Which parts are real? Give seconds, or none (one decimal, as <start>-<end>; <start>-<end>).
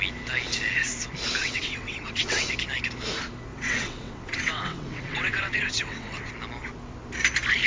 0.0-1.4; 2.5-3.5; 6.3-7.7